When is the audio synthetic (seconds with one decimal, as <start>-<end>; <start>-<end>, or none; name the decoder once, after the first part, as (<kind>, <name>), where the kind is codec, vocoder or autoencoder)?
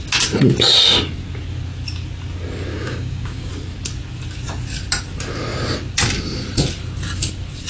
2.7-3.5 (codec, DAC)